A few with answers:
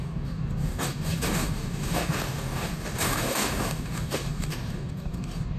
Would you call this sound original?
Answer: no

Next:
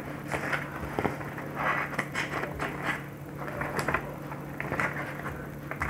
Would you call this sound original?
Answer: yes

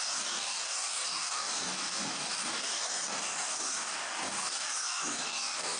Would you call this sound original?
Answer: no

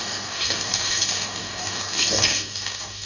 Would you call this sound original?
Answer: no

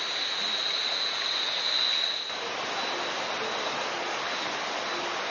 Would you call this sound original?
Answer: yes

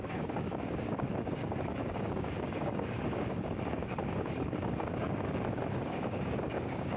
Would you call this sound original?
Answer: no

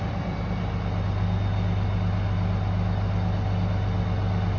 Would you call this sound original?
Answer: yes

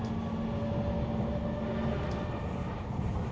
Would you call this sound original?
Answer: yes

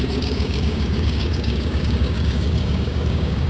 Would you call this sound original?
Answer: no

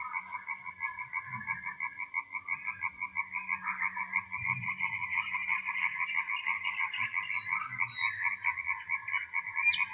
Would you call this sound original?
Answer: yes